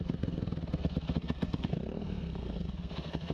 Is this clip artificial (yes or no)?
yes